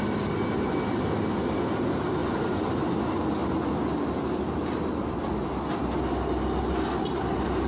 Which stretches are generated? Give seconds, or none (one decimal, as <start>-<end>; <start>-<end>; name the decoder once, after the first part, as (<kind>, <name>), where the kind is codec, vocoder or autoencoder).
2.2-2.9 (vocoder, BigVGAN v2)